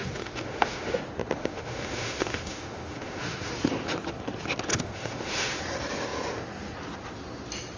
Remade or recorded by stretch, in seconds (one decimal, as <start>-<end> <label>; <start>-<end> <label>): 0.0-1.0 remade; 1.0-1.4 recorded; 1.4-3.5 remade; 3.5-4.7 recorded; 4.7-5.6 remade; 5.6-7.8 recorded

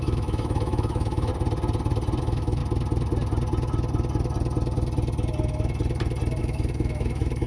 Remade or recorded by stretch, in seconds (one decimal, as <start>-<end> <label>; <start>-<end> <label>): 0.0-1.3 remade; 1.3-2.2 recorded; 2.2-2.6 remade; 2.6-6.4 recorded; 6.4-7.5 remade

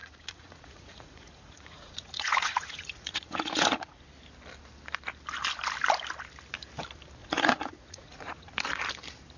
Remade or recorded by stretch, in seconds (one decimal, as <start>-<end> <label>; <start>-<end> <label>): 0.0-4.0 remade; 4.0-7.2 recorded; 7.2-8.5 remade; 8.5-9.4 recorded